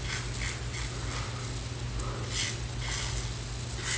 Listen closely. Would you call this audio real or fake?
real